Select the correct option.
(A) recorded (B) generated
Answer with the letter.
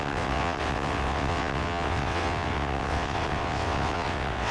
B